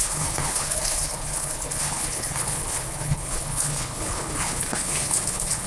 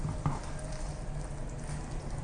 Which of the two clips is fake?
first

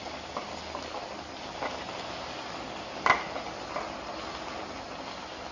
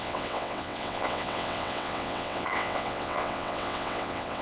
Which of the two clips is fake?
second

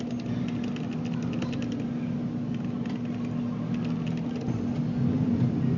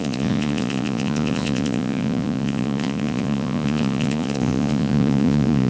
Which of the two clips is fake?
second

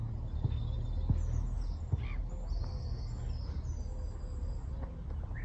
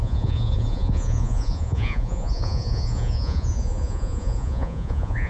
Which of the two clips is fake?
second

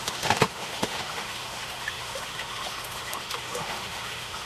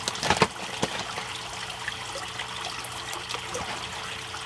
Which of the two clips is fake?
first